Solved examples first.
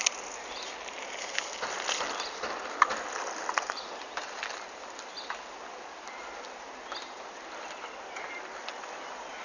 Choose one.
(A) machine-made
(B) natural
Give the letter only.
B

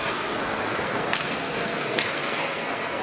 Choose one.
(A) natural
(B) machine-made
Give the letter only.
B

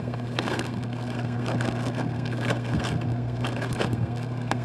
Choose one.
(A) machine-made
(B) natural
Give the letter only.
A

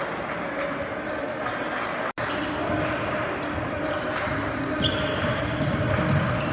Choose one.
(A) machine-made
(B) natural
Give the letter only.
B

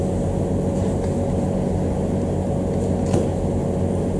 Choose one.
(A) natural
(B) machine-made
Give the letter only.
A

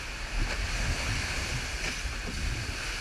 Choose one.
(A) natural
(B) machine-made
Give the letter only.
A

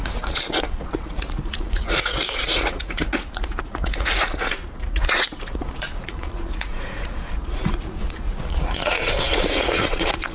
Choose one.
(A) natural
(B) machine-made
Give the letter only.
B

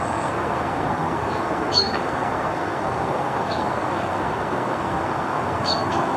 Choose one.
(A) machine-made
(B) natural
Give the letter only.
A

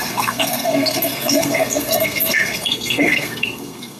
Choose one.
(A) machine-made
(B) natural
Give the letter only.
A